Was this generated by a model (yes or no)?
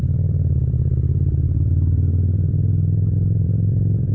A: yes